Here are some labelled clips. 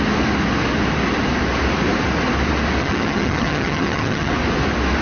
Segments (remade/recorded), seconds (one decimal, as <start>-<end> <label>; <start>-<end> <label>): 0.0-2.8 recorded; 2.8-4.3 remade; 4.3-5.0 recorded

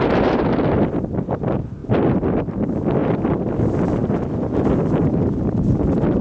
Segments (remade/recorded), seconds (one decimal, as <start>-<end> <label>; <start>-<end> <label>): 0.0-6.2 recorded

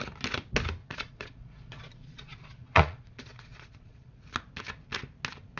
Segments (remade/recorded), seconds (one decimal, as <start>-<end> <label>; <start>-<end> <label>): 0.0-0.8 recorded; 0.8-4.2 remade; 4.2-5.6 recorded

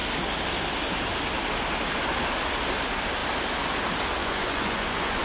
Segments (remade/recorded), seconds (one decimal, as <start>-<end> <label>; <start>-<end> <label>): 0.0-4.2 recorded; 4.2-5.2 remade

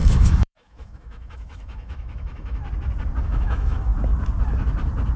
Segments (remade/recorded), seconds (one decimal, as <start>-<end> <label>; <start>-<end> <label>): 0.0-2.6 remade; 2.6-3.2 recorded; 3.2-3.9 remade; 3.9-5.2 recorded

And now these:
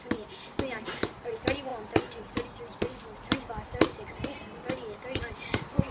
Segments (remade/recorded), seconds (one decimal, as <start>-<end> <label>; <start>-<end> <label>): 0.0-5.9 recorded

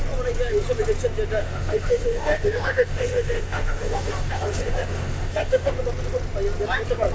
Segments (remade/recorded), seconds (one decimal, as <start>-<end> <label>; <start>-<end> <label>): 0.0-1.4 recorded; 1.4-5.7 remade; 5.7-7.1 recorded